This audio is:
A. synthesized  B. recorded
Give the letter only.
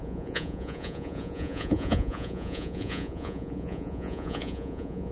A